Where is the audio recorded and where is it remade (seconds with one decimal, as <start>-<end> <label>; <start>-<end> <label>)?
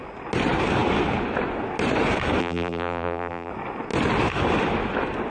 0.0-2.4 recorded; 2.4-3.5 remade; 3.5-5.3 recorded